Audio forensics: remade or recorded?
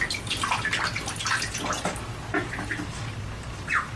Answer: recorded